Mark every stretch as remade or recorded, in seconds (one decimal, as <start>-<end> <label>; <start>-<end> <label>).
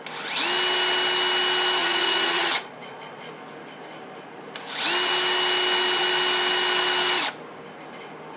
0.0-1.8 recorded; 1.8-3.3 remade; 3.3-8.4 recorded